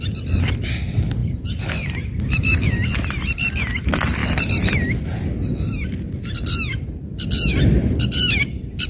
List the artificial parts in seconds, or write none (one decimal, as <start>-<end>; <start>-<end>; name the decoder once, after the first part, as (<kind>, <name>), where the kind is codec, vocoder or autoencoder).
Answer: 1.2-3.7 (vocoder, BigVGAN v2)